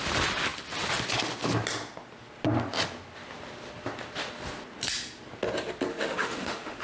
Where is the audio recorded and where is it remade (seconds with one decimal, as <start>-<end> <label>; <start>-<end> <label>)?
0.0-5.9 recorded; 5.9-6.8 remade